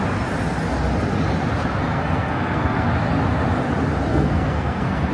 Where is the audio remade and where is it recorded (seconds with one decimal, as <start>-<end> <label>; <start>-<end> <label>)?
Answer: 0.0-1.8 recorded; 1.8-2.9 remade; 2.9-4.1 recorded; 4.1-5.1 remade